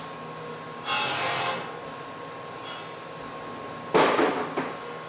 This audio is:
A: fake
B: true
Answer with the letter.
B